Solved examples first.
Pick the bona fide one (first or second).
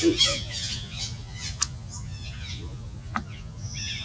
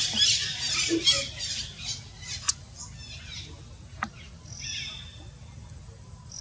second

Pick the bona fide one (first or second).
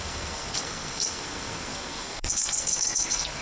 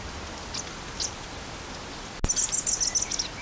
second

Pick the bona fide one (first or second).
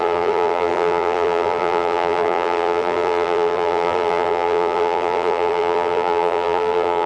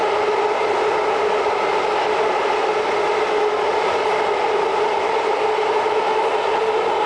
second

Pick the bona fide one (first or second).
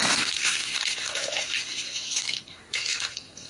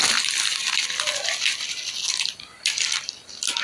second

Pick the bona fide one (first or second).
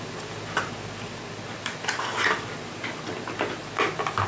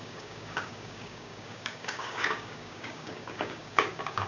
first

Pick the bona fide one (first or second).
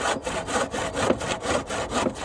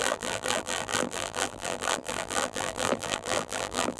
first